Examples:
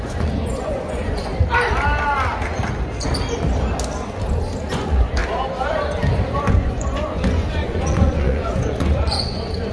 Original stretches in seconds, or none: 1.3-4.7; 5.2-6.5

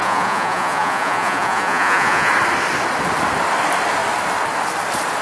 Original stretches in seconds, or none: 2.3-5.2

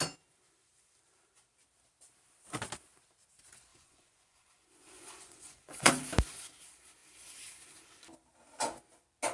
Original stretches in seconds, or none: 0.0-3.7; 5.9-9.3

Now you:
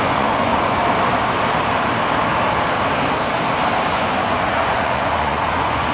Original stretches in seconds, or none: 0.8-3.9

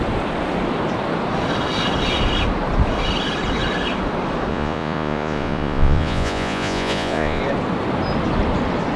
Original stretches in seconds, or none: 0.0-4.5; 7.4-9.0